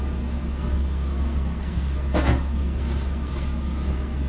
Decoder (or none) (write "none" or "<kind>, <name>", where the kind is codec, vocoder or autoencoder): codec, SNAC